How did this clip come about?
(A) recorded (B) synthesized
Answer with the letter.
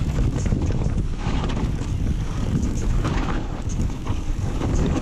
B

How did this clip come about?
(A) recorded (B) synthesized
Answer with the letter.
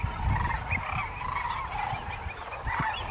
A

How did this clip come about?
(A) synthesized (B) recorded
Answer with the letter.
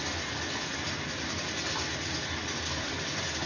B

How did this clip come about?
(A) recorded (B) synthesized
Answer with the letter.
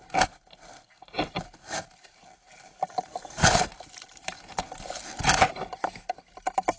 A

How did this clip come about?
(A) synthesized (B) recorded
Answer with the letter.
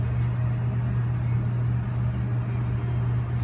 B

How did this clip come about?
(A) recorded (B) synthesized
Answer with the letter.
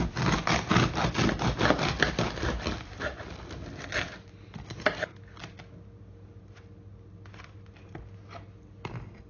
A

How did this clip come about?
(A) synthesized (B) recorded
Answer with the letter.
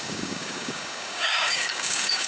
A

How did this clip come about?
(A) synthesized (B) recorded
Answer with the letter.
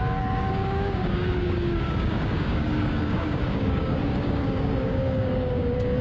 A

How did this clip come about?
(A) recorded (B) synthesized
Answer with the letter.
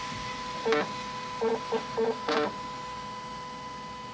A